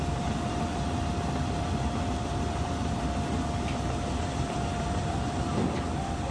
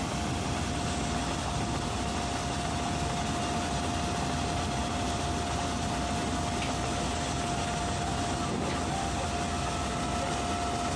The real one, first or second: second